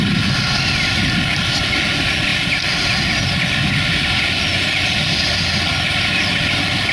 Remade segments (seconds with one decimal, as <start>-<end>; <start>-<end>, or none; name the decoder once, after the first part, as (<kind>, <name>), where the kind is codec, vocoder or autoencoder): none